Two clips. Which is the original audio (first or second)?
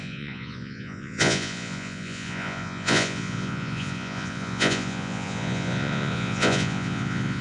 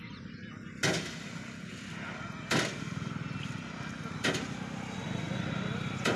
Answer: second